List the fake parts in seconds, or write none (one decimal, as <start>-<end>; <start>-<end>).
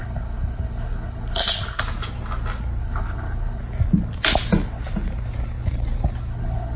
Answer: 0.0-1.8; 2.8-3.6; 6.3-6.8